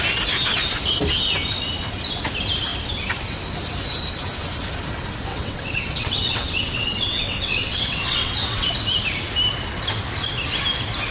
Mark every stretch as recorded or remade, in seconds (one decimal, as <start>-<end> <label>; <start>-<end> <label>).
0.0-5.3 recorded; 5.3-8.7 remade; 8.7-11.1 recorded